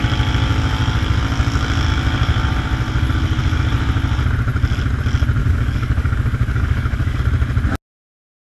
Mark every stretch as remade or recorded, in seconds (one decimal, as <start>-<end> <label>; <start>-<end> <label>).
0.0-5.4 recorded; 5.4-7.2 remade; 7.2-8.5 recorded